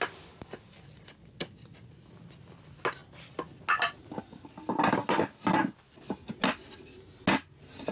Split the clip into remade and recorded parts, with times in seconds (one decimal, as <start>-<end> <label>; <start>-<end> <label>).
0.0-7.9 recorded

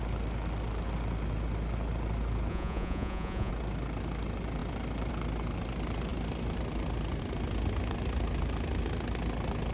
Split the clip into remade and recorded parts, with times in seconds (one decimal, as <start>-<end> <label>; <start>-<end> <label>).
0.0-2.5 recorded; 2.5-3.5 remade; 3.5-9.7 recorded

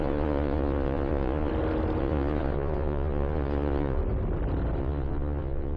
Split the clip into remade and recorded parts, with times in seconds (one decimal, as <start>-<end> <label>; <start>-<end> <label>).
0.0-1.5 remade; 1.5-2.0 recorded; 2.0-4.0 remade; 4.0-4.8 recorded; 4.8-5.8 remade

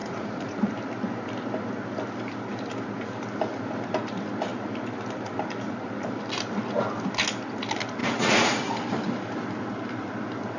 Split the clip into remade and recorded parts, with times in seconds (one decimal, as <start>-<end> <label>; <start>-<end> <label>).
0.0-0.7 remade; 0.7-8.0 recorded; 8.0-8.6 remade; 8.6-10.6 recorded

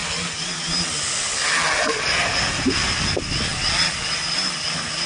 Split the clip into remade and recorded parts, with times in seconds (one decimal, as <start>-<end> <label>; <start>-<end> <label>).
0.0-5.1 recorded

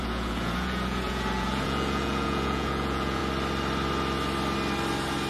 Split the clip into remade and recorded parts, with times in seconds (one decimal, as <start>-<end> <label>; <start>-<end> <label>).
0.0-3.2 remade; 3.2-5.3 recorded

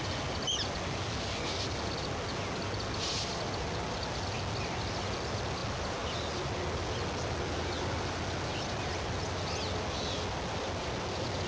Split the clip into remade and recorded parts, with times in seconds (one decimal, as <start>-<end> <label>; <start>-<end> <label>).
0.0-11.5 recorded

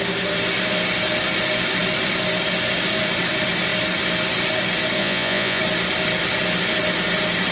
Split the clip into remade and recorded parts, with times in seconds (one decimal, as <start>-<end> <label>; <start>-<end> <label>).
0.0-5.0 recorded; 5.0-5.6 remade; 5.6-7.5 recorded